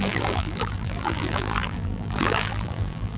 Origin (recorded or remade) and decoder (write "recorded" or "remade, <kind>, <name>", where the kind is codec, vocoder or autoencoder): remade, vocoder, BigVGAN v2